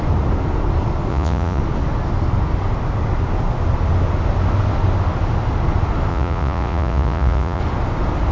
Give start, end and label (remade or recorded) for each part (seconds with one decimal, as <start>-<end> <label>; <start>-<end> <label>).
0.0-1.1 recorded; 1.1-1.6 remade; 1.6-6.1 recorded; 6.1-7.6 remade; 7.6-8.3 recorded